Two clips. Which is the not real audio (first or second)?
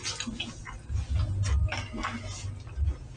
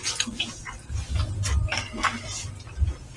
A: second